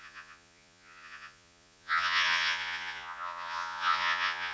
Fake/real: fake